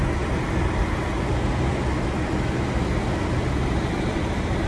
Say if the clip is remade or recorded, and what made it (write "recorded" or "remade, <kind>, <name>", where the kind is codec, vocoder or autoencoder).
recorded